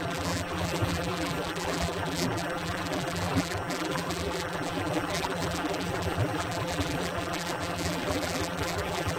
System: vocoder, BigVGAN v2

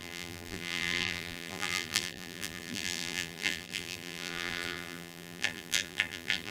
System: vocoder, BigVGAN v2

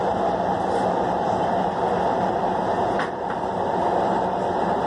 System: none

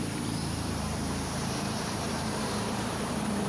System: vocoder, BigVGAN v2